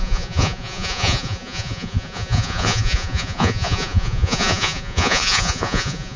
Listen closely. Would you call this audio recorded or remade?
remade